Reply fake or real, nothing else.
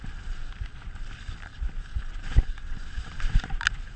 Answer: real